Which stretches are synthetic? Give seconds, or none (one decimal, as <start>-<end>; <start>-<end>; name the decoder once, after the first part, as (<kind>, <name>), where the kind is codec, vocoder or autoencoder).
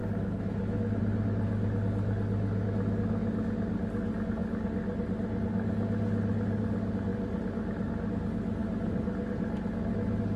0.0-1.0 (autoencoder, DAC-VAE)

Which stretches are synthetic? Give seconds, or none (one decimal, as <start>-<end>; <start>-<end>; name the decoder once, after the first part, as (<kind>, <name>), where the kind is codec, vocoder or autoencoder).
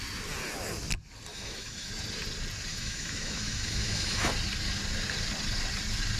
1.3-1.9 (autoencoder, DAC-VAE); 2.7-4.3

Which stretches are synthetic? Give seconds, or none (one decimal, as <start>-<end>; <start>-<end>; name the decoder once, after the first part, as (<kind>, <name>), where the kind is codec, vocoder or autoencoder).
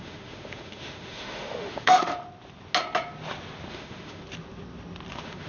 0.0-2.1 (autoencoder, DAC-VAE); 3.7-4.2; 5.1-5.5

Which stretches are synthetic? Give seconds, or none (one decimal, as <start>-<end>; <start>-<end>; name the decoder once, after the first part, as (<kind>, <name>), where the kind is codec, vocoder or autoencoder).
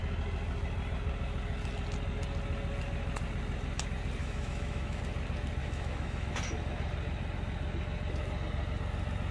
4.2-5.0 (autoencoder, DAC-VAE); 5.6-6.3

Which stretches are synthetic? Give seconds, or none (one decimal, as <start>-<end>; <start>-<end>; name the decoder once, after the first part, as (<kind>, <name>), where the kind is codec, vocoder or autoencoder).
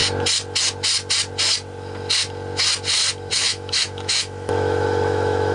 3.3-5.5 (autoencoder, DAC-VAE)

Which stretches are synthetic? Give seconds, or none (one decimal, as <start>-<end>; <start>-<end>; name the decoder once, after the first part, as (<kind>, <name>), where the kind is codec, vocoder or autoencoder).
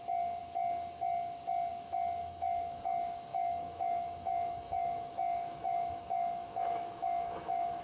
2.2-2.8 (autoencoder, DAC-VAE); 3.3-7.8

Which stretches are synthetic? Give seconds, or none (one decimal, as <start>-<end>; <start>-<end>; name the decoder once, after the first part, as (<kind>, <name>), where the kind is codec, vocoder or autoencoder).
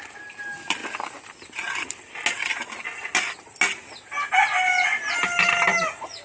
none